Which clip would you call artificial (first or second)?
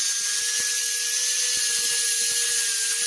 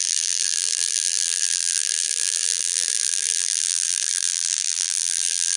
second